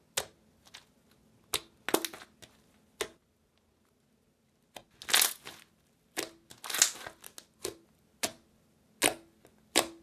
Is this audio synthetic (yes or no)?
no